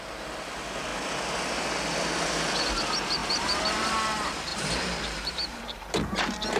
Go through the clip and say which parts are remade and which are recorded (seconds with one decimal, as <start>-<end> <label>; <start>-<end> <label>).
0.0-3.2 recorded; 3.2-3.9 remade; 3.9-4.5 recorded; 4.5-6.6 remade